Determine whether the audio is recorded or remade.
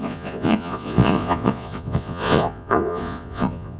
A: remade